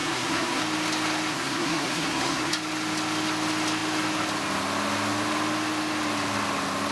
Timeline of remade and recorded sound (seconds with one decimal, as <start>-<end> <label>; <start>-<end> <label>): 0.0-0.6 remade; 0.6-1.3 recorded; 1.3-2.5 remade; 2.5-6.9 recorded